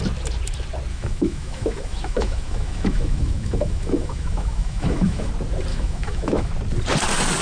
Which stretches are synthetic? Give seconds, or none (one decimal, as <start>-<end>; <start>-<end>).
0.9-5.3; 5.7-6.5